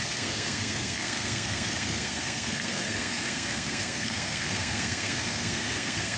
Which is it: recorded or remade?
remade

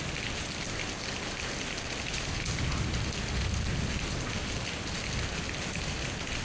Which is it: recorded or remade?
recorded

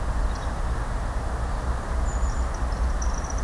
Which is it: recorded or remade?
recorded